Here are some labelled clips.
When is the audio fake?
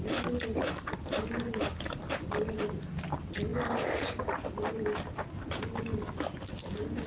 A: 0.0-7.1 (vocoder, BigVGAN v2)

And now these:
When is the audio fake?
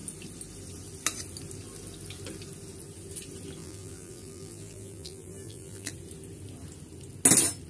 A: 3.6-5.9 (vocoder, BigVGAN v2)